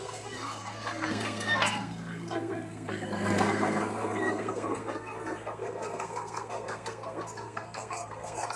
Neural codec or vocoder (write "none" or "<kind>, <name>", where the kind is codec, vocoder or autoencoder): codec, SNAC